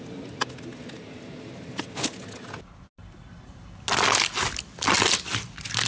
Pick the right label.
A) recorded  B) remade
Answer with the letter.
A